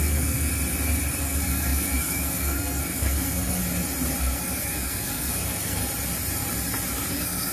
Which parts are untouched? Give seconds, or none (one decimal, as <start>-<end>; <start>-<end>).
0.5-1.2; 3.6-4.2; 5.8-7.1